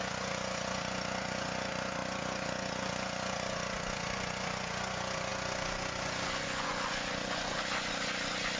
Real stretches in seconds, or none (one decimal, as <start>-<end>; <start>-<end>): none